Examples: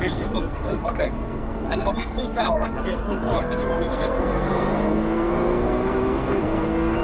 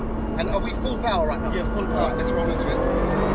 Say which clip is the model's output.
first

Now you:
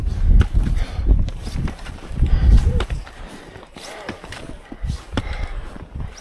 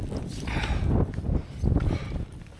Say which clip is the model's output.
first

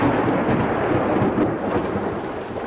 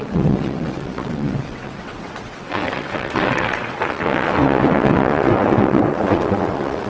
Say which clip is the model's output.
second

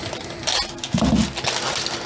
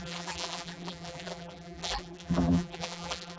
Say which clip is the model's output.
second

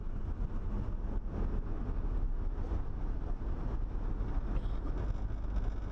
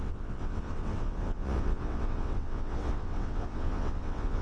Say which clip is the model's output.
second